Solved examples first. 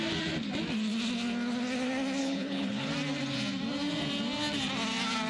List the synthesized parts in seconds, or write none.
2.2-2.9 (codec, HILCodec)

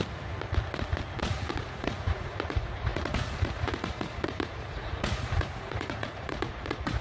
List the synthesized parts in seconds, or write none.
1.2-7.0 (vocoder, Vocos)

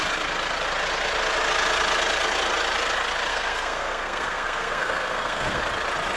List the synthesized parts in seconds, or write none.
3.3-5.6 (codec, SNAC)

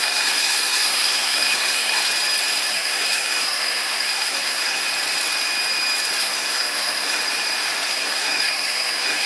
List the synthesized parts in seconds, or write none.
0.0-2.0 (codec, SNAC); 2.7-4.8; 6.2-7.2; 7.9-9.3

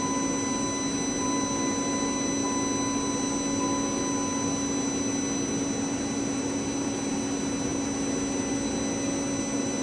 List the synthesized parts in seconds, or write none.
none